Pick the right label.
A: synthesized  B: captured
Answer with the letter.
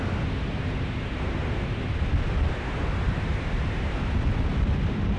B